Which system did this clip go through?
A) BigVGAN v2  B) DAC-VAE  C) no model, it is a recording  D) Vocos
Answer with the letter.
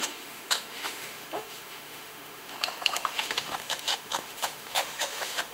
B